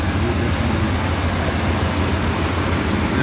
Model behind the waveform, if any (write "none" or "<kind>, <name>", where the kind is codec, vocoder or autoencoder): none